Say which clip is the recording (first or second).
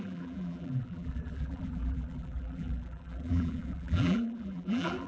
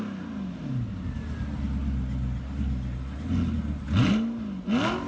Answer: second